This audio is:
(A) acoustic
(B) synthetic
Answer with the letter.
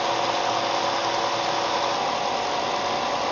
A